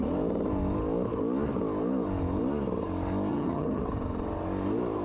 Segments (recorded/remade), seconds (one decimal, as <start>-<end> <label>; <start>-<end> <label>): 0.0-3.3 recorded; 3.3-3.8 remade; 3.8-5.0 recorded